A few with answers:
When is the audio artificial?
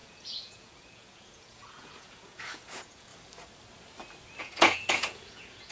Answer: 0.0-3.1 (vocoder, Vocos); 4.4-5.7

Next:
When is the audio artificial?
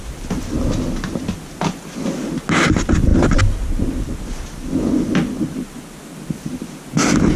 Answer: none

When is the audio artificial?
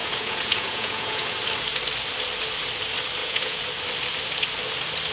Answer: 0.0-1.3 (vocoder, Vocos); 3.2-3.7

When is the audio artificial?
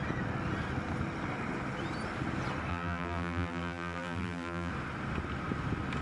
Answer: 2.7-4.7 (vocoder, BigVGAN v2)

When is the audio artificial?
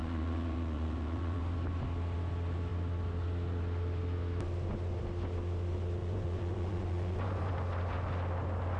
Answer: 0.0-1.4 (vocoder, Vocos); 6.0-7.5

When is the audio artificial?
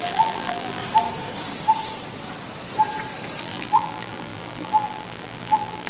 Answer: 0.0-0.8 (vocoder, BigVGAN v2); 3.4-5.9